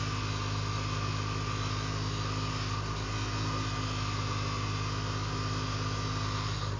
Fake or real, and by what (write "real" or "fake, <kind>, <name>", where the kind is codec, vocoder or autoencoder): real